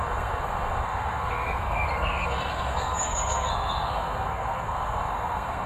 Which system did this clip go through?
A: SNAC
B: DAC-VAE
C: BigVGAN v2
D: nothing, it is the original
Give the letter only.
A